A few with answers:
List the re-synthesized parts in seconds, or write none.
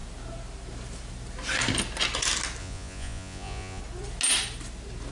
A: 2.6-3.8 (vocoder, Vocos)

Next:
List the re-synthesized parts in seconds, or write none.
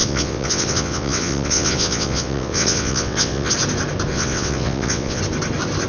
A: 0.0-3.5 (vocoder, WaveNeXt); 4.1-5.2